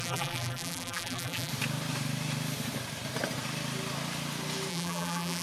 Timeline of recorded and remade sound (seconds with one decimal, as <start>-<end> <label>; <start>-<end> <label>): 0.0-1.5 remade; 1.5-4.7 recorded; 4.7-5.4 remade